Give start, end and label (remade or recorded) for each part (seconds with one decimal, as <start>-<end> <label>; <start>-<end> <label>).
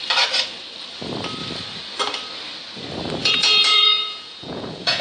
0.0-3.2 recorded; 3.2-5.0 remade